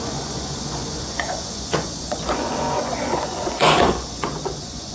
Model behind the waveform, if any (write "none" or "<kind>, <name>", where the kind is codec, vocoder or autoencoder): vocoder, Vocos